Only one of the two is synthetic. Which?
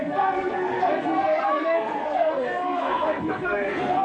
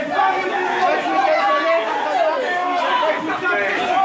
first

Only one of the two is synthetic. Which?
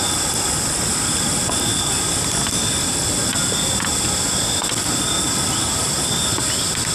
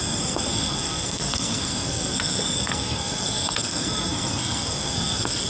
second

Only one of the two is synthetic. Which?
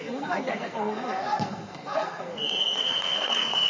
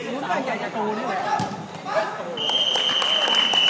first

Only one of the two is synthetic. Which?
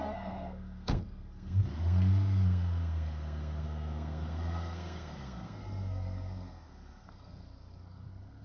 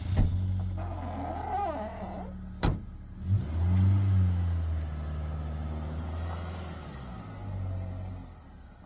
first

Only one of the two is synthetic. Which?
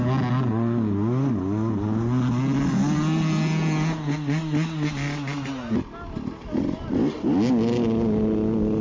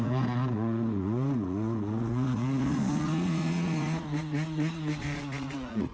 second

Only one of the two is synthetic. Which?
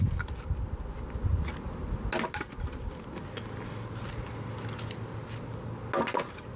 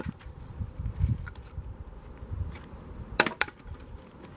second